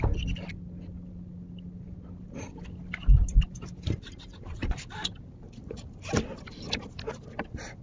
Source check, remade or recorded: recorded